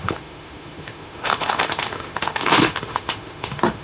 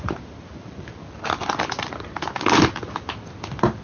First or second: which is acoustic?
second